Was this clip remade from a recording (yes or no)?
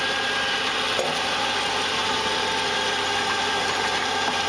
no